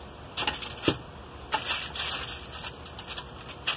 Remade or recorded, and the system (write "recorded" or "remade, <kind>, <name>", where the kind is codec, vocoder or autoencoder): recorded